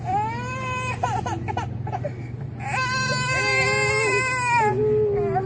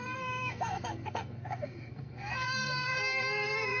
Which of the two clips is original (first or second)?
first